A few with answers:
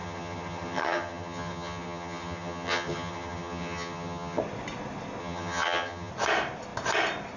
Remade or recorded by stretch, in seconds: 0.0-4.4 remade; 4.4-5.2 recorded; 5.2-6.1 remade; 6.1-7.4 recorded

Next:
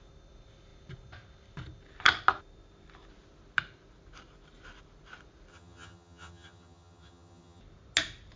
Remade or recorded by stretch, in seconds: 0.0-5.5 recorded; 5.5-7.6 remade; 7.6-8.4 recorded

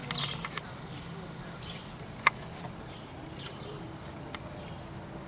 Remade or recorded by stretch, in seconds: 0.0-5.3 recorded

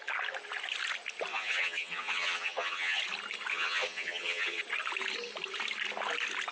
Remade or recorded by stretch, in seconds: 0.0-1.3 recorded; 1.3-3.0 remade; 3.0-3.5 recorded; 3.5-4.6 remade; 4.6-6.5 recorded

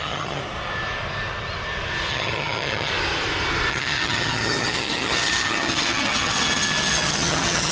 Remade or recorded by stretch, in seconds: 0.0-0.4 remade; 0.4-2.1 recorded; 2.1-2.9 remade; 2.9-3.7 recorded; 3.7-7.7 remade

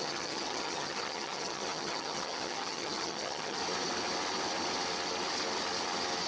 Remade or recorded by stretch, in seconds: 0.0-3.6 remade; 3.6-6.3 recorded

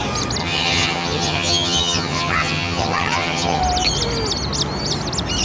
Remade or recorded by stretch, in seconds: 0.0-0.4 recorded; 0.4-3.6 remade; 3.6-5.4 recorded

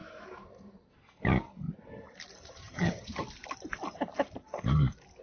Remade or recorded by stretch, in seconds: 0.0-2.6 recorded; 2.6-3.2 remade; 3.2-5.2 recorded